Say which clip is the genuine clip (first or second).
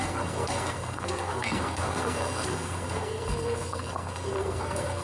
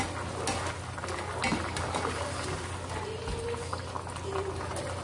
second